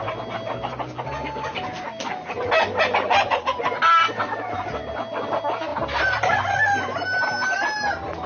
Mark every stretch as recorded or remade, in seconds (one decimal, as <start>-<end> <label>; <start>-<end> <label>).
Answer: 0.0-8.3 recorded